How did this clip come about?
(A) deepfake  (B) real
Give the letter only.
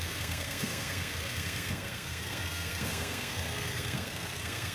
A